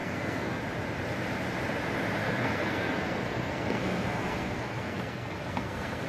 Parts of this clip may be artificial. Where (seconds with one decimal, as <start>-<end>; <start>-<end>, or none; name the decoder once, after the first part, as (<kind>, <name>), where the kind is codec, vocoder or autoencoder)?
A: 0.0-0.6 (codec, SNAC); 2.2-6.1